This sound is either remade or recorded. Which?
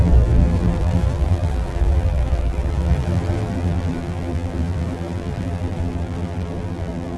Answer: remade